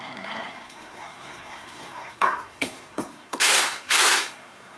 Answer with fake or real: fake